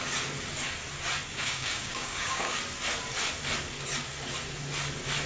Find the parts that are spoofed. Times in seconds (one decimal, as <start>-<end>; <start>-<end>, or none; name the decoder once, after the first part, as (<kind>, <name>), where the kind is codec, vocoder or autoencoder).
1.3-2.6 (codec, DAC)